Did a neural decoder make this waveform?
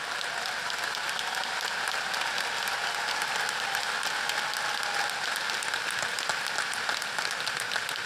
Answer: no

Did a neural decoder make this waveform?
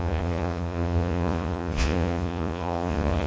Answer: yes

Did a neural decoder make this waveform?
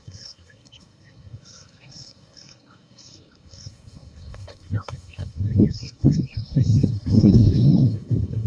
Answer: yes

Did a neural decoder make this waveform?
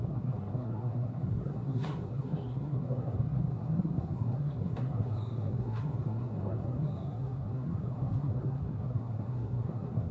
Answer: yes